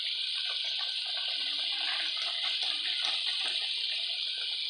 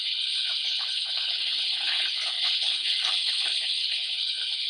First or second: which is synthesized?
second